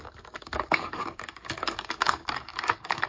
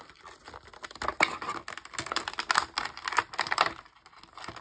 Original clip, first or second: second